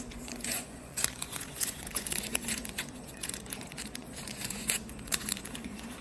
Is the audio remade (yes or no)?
yes